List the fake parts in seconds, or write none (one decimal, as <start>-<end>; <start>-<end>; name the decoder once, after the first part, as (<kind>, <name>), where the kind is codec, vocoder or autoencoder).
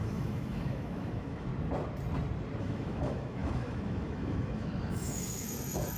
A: 0.0-1.5 (autoencoder, DAC-VAE); 2.6-6.0